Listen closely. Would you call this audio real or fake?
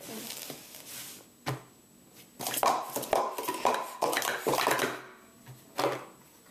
real